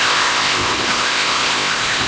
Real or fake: fake